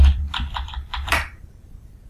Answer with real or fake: fake